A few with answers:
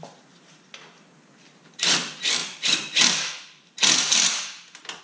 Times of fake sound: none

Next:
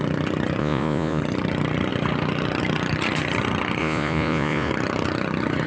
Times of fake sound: 0.6-1.2 (vocoder, Vocos); 3.8-4.7

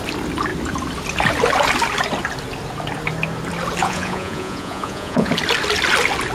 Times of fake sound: 3.8-5.3 (vocoder, Vocos)

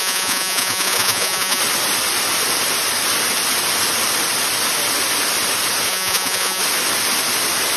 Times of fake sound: 0.0-1.6 (vocoder, Vocos); 5.9-6.6

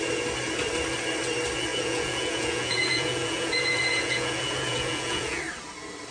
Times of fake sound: 1.7-5.4 (vocoder, Vocos)

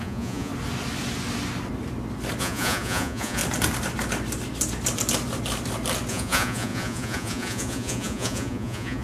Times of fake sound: 0.0-0.5 (vocoder, Vocos); 2.4-3.4; 6.1-9.0

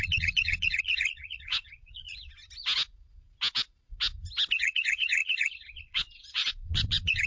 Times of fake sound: 0.0-2.4 (vocoder, Vocos); 4.5-7.3

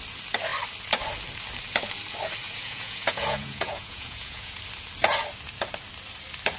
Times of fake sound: 2.4-4.6 (vocoder, Vocos)